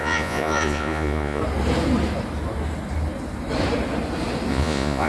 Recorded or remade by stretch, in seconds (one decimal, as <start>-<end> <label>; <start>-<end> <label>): 0.0-1.4 remade; 1.4-4.5 recorded; 4.5-5.1 remade